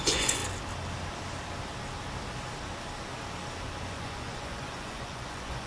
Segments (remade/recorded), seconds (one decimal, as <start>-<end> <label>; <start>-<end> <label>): 0.0-0.4 remade; 0.4-3.8 recorded; 3.8-5.7 remade